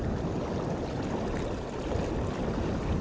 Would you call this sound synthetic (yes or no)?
no